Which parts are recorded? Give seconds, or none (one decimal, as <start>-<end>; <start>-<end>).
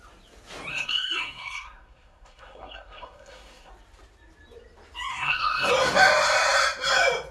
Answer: 0.0-0.7; 3.7-5.1; 5.7-7.3